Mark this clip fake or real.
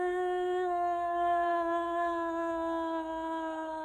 fake